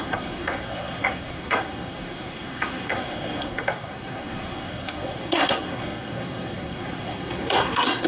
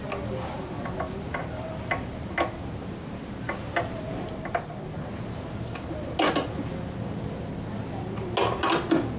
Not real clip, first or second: first